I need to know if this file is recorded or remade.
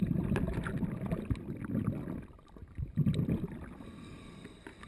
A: remade